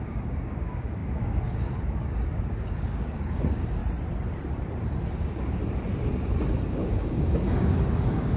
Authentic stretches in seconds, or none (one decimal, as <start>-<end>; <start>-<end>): 3.8-5.1; 5.6-6.7